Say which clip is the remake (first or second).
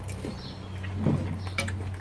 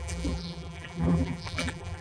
second